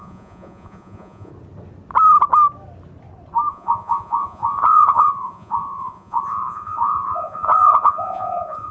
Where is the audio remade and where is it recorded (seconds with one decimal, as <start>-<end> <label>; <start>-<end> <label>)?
0.0-1.3 remade; 1.3-3.5 recorded; 3.5-8.7 remade